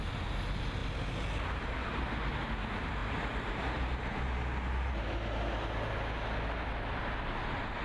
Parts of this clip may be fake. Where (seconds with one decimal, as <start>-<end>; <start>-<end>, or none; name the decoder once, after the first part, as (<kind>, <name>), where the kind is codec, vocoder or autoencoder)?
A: none